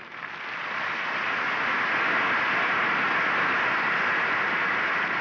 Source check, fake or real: real